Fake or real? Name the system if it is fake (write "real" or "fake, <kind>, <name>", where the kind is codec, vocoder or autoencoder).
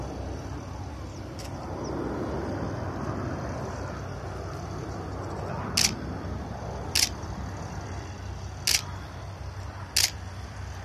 real